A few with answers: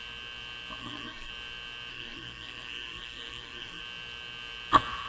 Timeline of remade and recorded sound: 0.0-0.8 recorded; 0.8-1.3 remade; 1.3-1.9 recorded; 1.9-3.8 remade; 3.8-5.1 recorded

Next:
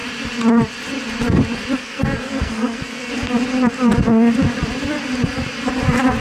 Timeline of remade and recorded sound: 0.0-1.8 recorded; 1.8-3.1 remade; 3.1-6.2 recorded

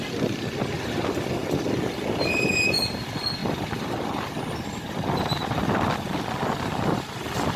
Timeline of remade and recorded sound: 0.0-7.6 recorded

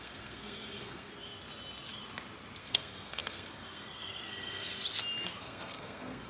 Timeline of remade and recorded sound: 0.0-1.1 remade; 1.1-2.6 recorded; 2.6-4.7 remade; 4.7-5.3 recorded; 5.3-6.3 remade

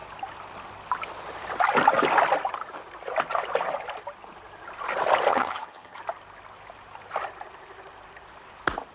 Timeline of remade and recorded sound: 0.0-5.3 recorded; 5.3-6.0 remade; 6.0-8.9 recorded